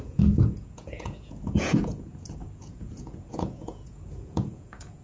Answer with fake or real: fake